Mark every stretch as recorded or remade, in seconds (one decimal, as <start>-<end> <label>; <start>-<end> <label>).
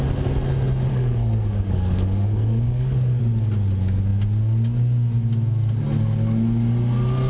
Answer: 0.0-0.9 recorded; 0.9-3.2 remade; 3.2-7.3 recorded